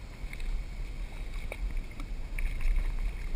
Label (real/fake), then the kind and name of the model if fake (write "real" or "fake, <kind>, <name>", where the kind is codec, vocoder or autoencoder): real